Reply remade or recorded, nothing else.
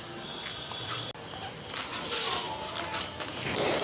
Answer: recorded